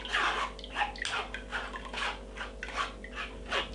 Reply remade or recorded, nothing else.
recorded